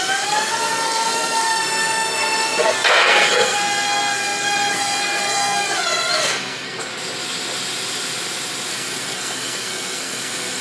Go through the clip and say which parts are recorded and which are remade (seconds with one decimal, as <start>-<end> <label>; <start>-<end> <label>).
0.0-6.9 remade; 6.9-8.7 recorded; 8.7-10.6 remade